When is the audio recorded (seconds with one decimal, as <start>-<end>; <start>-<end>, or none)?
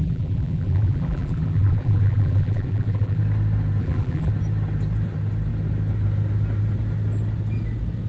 3.2-3.8; 4.3-8.1